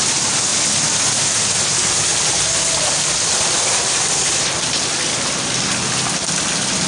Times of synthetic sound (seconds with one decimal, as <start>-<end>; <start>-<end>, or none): none